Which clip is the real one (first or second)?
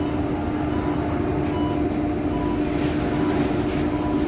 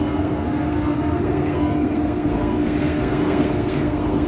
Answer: first